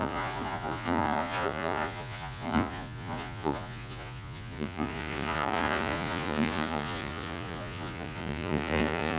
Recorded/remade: remade